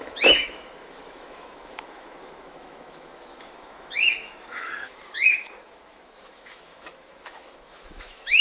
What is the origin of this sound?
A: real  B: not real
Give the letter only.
B